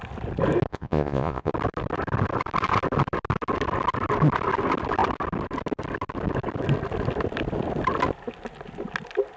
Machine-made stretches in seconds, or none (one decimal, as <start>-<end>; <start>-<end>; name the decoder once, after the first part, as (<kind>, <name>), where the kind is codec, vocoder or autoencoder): 0.7-1.5 (vocoder, Vocos)